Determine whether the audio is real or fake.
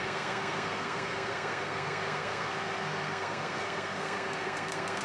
fake